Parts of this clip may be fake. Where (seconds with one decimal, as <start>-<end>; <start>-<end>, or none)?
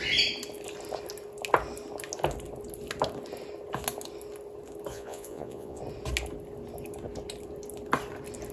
4.9-5.8